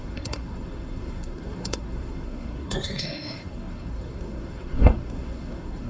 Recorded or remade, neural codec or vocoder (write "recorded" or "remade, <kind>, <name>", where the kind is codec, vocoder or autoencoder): remade, codec, SNAC